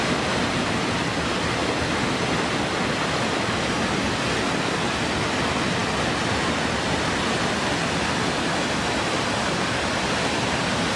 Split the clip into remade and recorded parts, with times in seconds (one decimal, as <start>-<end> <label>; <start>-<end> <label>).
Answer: 0.0-11.0 recorded